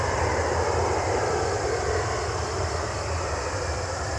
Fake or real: real